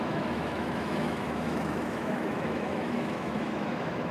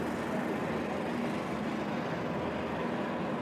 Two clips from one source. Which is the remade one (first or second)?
first